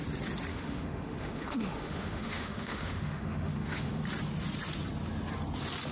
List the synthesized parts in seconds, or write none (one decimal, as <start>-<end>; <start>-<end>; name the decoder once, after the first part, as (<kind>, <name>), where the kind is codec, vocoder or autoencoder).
0.5-4.0 (autoencoder, DAC-VAE)